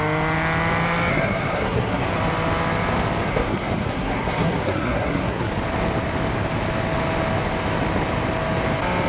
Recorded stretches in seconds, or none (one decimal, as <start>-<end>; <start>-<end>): 0.0-1.1; 2.0-3.3; 5.5-9.1